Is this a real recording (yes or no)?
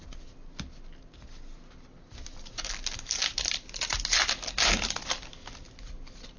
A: yes